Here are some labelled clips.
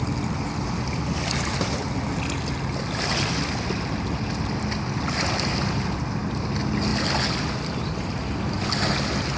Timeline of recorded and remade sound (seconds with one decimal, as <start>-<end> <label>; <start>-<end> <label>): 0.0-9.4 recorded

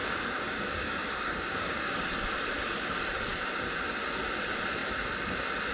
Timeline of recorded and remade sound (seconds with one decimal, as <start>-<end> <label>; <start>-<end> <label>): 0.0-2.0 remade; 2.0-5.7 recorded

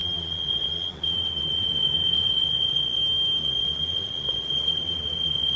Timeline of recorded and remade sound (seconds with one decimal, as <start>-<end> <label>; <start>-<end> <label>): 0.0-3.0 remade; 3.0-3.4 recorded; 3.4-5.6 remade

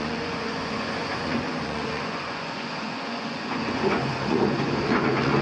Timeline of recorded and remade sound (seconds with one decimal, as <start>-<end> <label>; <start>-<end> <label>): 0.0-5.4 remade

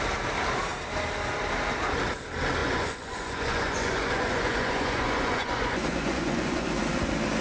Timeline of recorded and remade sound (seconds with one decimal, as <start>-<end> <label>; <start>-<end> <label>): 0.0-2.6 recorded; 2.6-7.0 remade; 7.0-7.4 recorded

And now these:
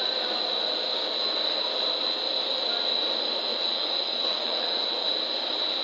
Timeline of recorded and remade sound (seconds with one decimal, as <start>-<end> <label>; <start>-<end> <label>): 0.0-3.5 recorded; 3.5-5.1 remade; 5.1-5.8 recorded

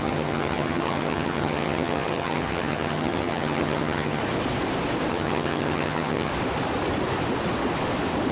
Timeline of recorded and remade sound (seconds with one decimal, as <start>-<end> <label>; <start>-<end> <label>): 0.0-4.2 remade; 4.2-5.1 recorded; 5.1-6.3 remade; 6.3-8.3 recorded